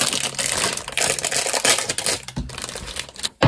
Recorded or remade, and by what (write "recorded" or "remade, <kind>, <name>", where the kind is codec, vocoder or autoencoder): recorded